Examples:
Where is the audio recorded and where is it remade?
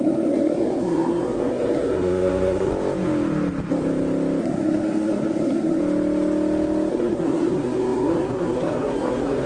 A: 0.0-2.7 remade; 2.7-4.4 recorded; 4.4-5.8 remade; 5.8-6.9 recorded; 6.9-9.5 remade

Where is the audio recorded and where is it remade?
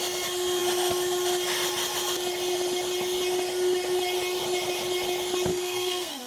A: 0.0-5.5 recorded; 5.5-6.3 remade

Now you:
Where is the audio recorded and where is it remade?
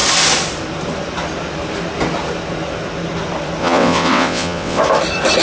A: 0.0-3.6 recorded; 3.6-4.8 remade; 4.8-5.4 recorded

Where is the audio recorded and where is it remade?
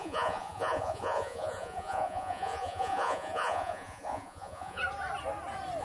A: 0.0-4.8 remade; 4.8-5.8 recorded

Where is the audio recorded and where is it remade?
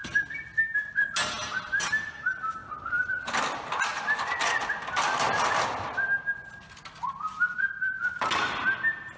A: 0.0-9.2 recorded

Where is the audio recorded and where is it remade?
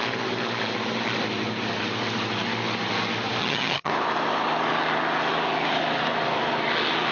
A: 0.0-3.4 recorded; 3.4-3.9 remade; 3.9-7.1 recorded